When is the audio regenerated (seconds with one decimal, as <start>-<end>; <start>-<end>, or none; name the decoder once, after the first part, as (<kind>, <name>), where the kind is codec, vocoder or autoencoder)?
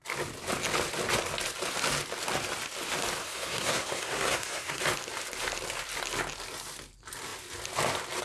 3.2-4.8 (codec, SNAC)